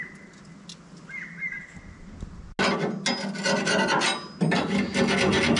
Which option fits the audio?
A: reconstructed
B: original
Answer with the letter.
B